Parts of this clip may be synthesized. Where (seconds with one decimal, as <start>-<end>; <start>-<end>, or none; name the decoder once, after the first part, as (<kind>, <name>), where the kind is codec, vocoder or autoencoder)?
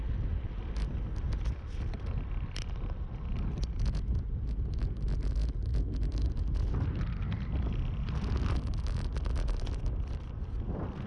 none